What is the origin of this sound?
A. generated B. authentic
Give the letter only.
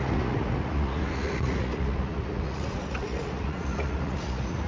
A